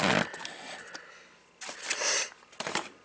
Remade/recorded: recorded